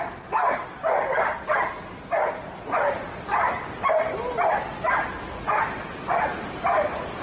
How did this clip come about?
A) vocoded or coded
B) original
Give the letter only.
A